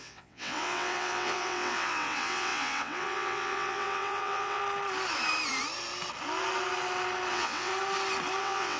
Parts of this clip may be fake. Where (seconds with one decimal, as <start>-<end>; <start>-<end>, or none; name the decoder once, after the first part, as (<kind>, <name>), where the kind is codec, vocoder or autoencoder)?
0.0-4.6 (vocoder, WaveNeXt); 7.3-7.7; 8.4-8.8